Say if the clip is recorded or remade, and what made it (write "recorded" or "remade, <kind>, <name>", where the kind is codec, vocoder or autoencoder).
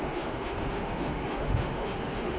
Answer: remade, autoencoder, DAC-VAE